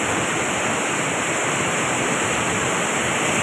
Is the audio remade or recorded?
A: recorded